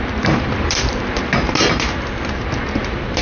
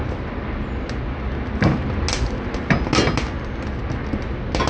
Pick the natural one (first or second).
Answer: second